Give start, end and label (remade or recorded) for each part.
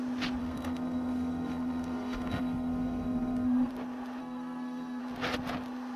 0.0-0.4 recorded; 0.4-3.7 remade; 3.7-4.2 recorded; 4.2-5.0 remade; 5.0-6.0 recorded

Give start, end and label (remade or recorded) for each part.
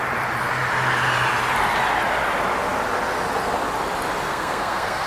0.0-4.3 recorded; 4.3-5.1 remade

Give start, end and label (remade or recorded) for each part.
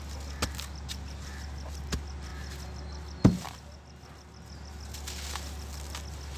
0.0-6.4 recorded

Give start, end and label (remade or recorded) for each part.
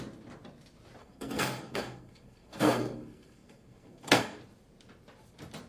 0.0-1.0 recorded; 1.0-4.4 remade; 4.4-5.7 recorded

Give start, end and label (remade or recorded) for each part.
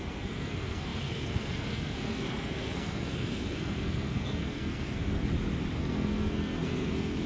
0.0-5.3 remade; 5.3-5.8 recorded; 5.8-7.3 remade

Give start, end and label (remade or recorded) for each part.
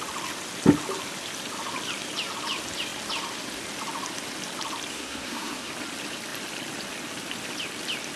0.0-4.9 recorded; 4.9-5.7 remade; 5.7-8.2 recorded